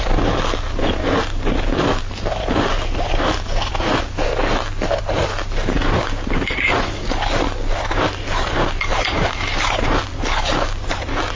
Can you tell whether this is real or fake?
real